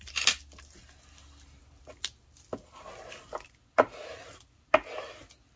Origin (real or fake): real